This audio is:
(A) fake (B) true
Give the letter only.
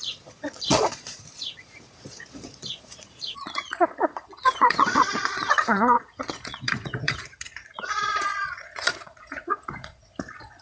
A